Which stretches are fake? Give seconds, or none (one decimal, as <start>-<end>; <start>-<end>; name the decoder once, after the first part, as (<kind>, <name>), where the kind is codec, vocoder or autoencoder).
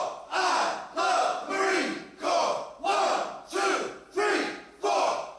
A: none